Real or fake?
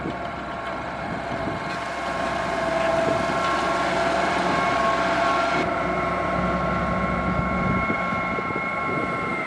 real